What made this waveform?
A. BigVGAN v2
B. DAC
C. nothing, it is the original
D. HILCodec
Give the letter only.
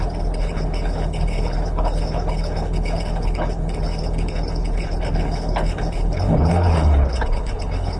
D